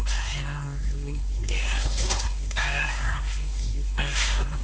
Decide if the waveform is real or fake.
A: fake